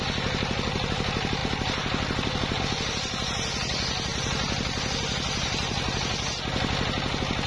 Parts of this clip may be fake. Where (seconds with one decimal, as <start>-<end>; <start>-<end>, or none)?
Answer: none